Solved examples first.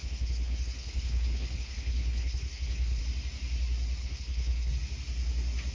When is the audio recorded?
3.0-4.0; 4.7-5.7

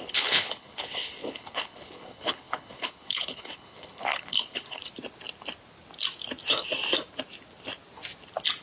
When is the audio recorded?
4.8-8.6

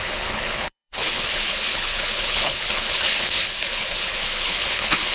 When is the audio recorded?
none

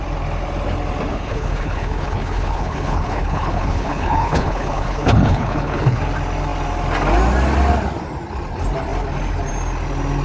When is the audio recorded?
0.0-1.1; 6.0-10.2

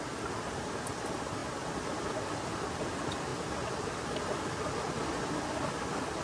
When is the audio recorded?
0.0-6.2

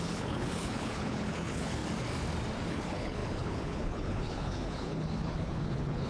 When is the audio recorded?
1.8-2.7